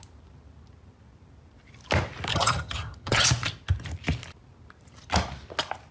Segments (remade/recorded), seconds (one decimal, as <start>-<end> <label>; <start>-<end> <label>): 0.0-2.3 recorded; 2.3-3.3 remade; 3.3-5.9 recorded